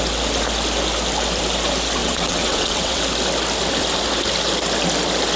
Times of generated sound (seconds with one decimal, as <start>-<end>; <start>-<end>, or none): 2.0-3.0